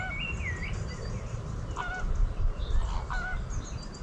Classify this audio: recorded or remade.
recorded